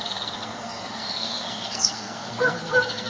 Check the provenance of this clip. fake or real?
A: fake